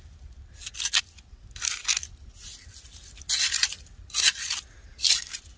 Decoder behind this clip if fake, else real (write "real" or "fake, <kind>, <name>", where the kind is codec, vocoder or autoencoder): real